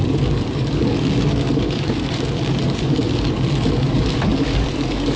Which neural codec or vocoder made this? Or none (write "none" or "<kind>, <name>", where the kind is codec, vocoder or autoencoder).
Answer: codec, DAC